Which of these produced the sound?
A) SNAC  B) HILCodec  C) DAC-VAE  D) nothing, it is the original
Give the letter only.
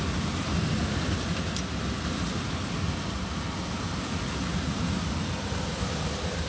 D